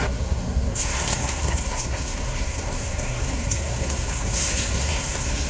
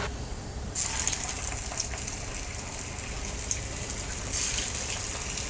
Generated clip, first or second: first